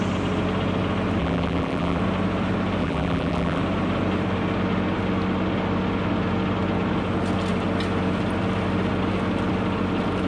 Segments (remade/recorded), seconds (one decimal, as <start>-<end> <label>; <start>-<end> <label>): 0.0-1.2 recorded; 1.2-2.0 remade; 2.0-2.8 recorded; 2.8-3.6 remade; 3.6-10.3 recorded